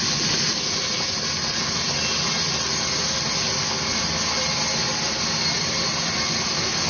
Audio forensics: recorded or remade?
recorded